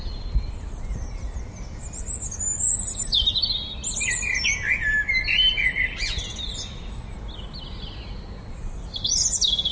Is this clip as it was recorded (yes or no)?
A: yes